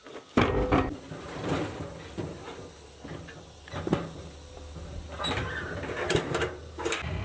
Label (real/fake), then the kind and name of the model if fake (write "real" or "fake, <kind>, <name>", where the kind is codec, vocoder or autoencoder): real